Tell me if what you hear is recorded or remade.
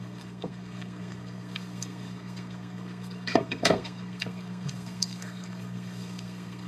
remade